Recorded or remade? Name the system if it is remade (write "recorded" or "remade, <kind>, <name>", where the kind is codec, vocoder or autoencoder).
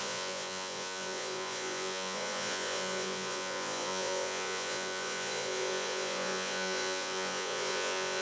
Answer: remade, vocoder, Vocos